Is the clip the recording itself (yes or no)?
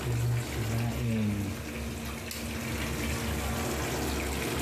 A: yes